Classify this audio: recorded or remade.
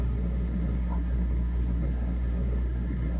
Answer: remade